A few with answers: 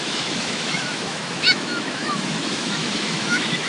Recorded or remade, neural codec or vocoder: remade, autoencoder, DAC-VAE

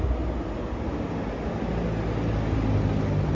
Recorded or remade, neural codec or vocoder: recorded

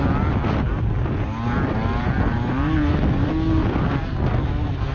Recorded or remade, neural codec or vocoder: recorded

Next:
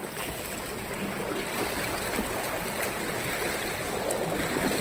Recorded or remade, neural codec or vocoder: recorded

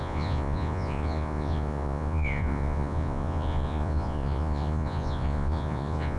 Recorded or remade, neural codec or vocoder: remade, vocoder, Vocos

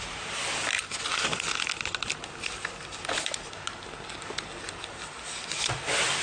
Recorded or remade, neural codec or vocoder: recorded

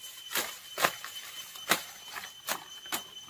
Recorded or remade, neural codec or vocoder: recorded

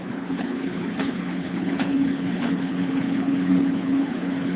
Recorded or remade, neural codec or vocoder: remade, codec, HILCodec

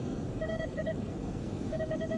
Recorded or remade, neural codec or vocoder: remade, codec, SNAC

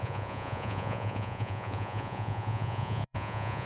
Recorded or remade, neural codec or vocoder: remade, vocoder, Vocos